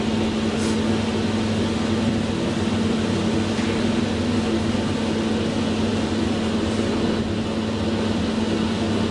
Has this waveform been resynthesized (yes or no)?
no